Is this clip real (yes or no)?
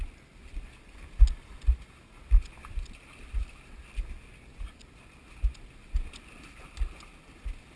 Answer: yes